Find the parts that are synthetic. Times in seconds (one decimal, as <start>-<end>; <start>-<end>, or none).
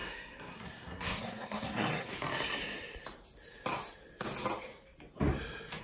0.0-2.1